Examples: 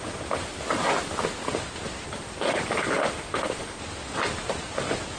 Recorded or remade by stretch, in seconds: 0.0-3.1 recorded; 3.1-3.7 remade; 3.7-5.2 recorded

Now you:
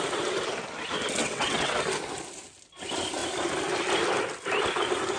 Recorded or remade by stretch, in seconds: 0.0-1.2 recorded; 1.2-1.8 remade; 1.8-5.2 recorded

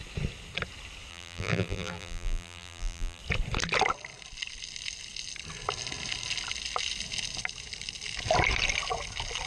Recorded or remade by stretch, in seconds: 0.0-1.1 recorded; 1.1-3.2 remade; 3.2-9.5 recorded

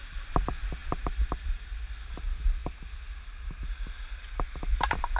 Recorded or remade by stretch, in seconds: 0.0-0.8 remade; 0.8-1.3 recorded; 1.3-2.6 remade; 2.6-4.8 recorded; 4.8-5.2 remade